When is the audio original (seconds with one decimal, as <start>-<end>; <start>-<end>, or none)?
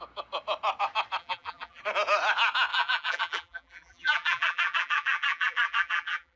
0.0-1.2; 1.8-2.7